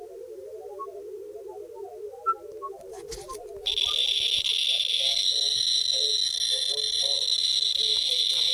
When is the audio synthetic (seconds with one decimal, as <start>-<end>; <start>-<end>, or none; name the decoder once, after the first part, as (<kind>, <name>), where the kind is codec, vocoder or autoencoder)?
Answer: none